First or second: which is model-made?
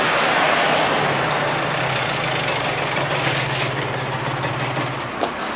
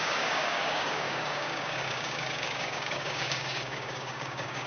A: second